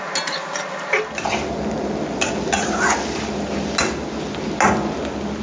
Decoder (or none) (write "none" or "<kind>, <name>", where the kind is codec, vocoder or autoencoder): none